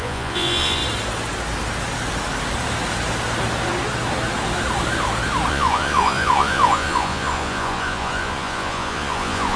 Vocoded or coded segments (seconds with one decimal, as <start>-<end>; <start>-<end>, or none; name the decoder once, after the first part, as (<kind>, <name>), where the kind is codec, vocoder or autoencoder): 0.0-0.8 (vocoder, Vocos); 5.5-9.6